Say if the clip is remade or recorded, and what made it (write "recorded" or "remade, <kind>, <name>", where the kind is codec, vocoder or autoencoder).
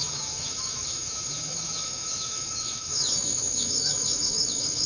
remade, autoencoder, DAC-VAE